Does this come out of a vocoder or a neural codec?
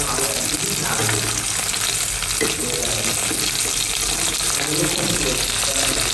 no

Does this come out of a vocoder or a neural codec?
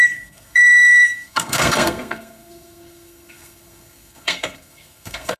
yes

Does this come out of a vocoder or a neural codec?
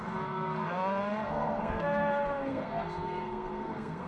yes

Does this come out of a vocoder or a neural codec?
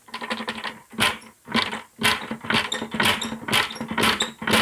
no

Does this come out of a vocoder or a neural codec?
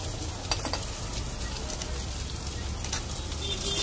no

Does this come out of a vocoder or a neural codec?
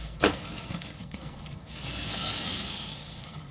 yes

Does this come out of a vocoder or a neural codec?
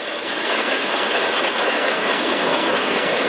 yes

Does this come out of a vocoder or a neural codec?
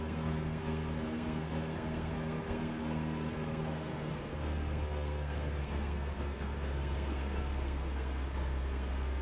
yes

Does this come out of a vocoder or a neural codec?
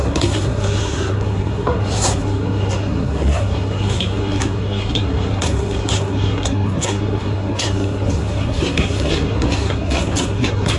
yes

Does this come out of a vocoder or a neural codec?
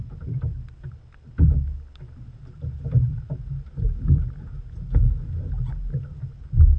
no